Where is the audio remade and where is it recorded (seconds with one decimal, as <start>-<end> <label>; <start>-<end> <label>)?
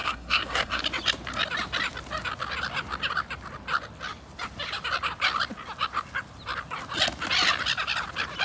0.0-0.8 remade; 0.8-8.4 recorded